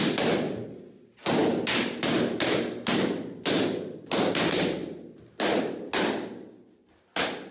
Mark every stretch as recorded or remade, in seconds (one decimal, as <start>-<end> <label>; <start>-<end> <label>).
0.0-7.5 recorded